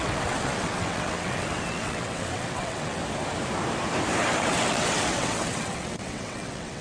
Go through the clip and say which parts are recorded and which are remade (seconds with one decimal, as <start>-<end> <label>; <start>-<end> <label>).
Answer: 0.0-3.0 remade; 3.0-4.2 recorded; 4.2-6.8 remade